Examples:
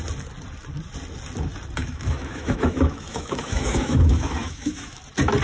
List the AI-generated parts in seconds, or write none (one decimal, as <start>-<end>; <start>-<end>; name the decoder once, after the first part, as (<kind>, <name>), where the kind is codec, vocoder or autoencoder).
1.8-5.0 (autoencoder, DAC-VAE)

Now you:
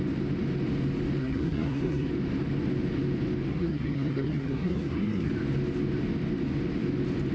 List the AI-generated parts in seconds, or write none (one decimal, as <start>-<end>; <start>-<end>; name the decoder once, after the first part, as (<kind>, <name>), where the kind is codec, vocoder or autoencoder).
1.2-2.1 (codec, SNAC); 3.5-5.3

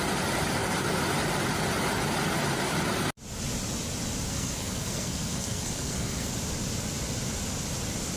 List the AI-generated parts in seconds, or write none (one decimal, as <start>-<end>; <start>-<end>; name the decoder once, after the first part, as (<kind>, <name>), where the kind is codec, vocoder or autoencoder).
4.3-6.3 (codec, SNAC)

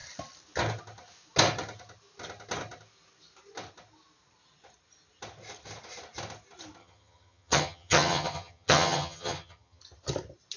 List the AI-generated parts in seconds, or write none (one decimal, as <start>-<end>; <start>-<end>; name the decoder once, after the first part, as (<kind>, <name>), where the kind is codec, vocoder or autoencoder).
6.8-9.8 (vocoder, HiFi-GAN)

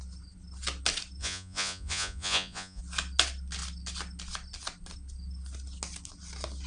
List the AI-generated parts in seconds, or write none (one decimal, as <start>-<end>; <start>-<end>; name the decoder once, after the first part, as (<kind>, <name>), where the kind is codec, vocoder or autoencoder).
1.2-2.8 (vocoder, Vocos)